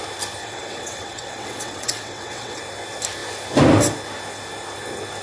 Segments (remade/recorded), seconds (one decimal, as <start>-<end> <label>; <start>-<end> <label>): 0.0-0.4 recorded; 0.4-2.6 remade; 2.6-5.2 recorded